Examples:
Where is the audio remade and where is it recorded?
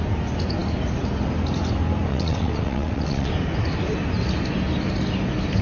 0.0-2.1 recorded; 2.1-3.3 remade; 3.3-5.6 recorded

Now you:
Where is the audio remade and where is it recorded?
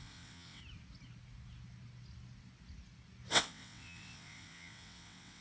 0.0-0.6 remade; 0.6-3.3 recorded; 3.3-5.4 remade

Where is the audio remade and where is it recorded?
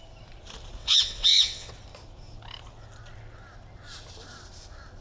0.0-0.8 recorded; 0.8-1.7 remade; 1.7-5.0 recorded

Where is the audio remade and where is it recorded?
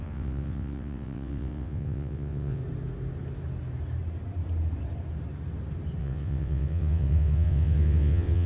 0.0-2.6 remade; 2.6-6.0 recorded; 6.0-8.5 remade